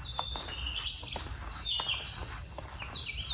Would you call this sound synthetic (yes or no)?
no